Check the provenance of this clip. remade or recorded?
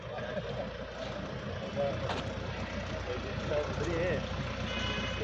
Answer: recorded